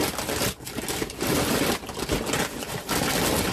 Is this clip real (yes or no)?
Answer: yes